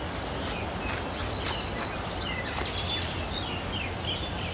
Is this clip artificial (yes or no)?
no